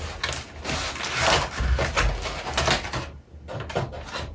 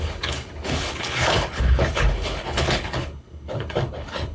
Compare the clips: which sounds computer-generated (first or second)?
second